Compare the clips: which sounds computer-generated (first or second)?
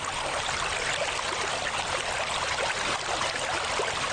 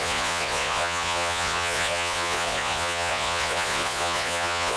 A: second